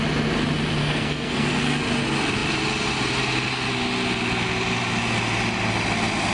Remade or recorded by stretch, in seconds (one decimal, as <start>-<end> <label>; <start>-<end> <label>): 0.0-0.8 recorded; 0.8-1.8 remade; 1.8-6.3 recorded